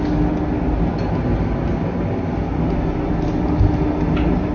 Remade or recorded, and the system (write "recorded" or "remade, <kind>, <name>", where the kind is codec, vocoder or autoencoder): recorded